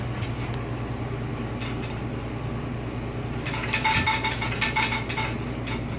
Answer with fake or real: real